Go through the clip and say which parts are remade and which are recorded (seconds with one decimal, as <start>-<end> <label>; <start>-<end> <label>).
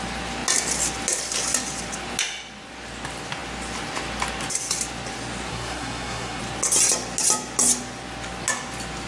0.0-5.5 recorded; 5.5-6.4 remade; 6.4-9.1 recorded